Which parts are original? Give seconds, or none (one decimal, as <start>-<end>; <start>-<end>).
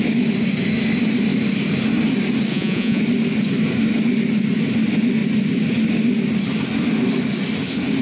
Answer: 0.0-2.5; 3.0-8.0